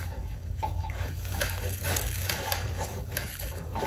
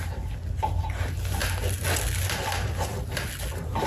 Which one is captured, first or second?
second